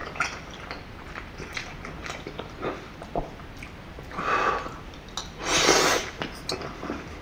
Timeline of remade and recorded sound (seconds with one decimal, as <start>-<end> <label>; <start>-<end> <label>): 0.0-0.7 remade; 0.7-2.0 recorded; 2.0-3.4 remade; 3.4-7.2 recorded